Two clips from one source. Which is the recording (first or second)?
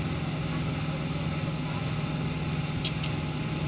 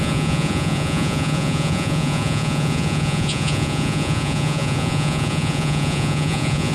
first